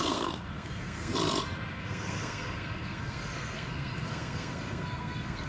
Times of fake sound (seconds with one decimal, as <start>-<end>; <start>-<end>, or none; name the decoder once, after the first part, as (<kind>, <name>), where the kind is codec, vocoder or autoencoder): 0.0-1.1 (codec, SNAC); 1.7-5.5